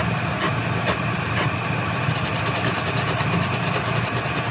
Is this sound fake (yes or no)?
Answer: no